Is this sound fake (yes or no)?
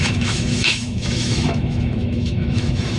yes